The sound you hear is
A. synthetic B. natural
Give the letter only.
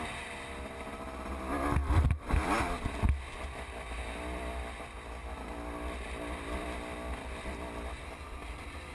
B